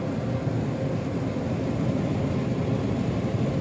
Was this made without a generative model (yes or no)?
yes